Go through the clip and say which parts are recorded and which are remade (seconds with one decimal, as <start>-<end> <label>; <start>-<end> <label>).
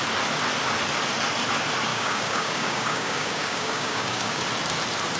0.0-1.9 recorded; 1.9-4.4 remade; 4.4-5.2 recorded